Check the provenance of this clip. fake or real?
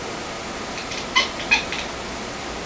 real